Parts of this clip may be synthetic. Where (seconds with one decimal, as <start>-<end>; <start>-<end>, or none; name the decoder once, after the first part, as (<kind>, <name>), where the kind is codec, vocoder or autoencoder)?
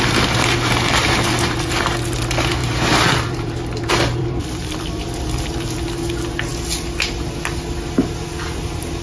2.6-5.4 (vocoder, BigVGAN v2)